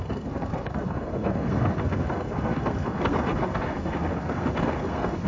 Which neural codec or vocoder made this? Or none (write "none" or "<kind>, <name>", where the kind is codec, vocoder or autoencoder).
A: codec, SNAC